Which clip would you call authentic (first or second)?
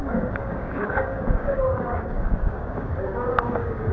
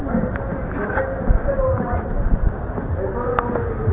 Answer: second